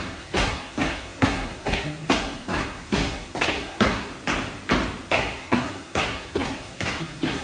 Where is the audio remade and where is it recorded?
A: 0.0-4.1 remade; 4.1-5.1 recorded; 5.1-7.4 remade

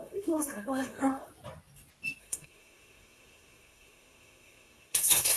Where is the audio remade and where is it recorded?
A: 0.0-1.3 remade; 1.3-2.2 recorded; 2.2-5.4 remade

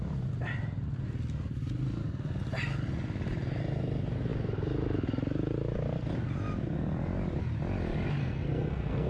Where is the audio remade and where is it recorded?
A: 0.0-8.2 recorded; 8.2-9.1 remade

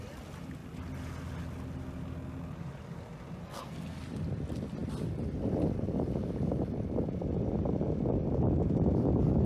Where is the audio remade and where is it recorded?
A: 0.0-3.4 recorded; 3.4-4.0 remade; 4.0-9.5 recorded